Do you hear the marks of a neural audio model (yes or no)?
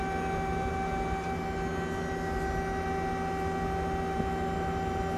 no